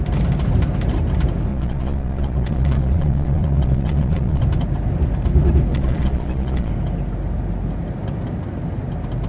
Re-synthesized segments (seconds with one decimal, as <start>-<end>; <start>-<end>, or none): 1.5-4.4; 5.7-6.7